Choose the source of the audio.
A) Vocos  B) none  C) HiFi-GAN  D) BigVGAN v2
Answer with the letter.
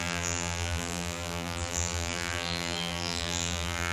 D